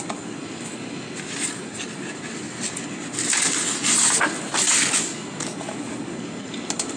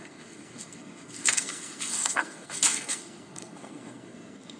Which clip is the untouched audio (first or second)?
first